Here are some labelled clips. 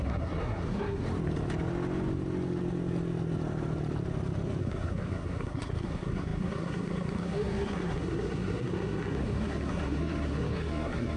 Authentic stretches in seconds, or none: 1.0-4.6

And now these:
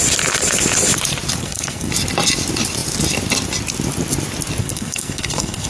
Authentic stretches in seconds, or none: 0.0-1.4; 1.9-4.6

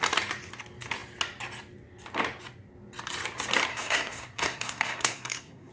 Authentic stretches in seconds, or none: 0.0-3.7

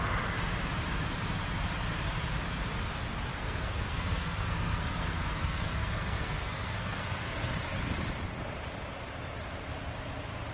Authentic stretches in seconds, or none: 0.0-3.3; 7.5-10.5

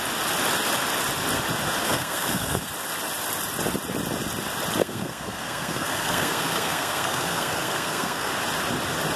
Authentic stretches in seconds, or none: 0.0-1.8; 2.7-4.8; 8.3-9.2